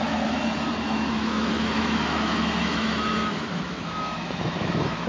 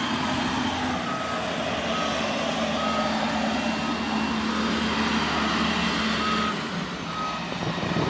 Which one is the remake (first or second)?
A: first